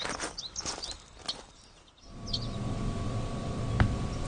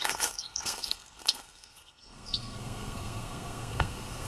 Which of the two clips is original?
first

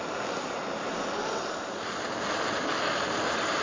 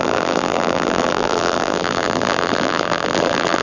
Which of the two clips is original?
first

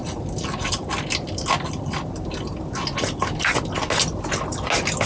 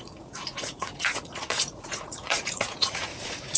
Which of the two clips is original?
first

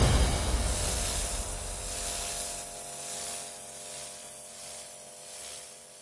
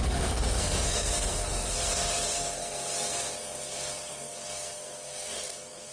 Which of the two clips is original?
first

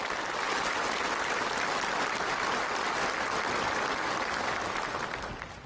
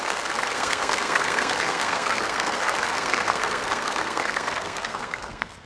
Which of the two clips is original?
first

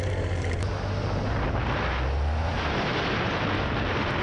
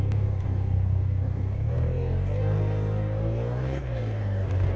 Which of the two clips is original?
first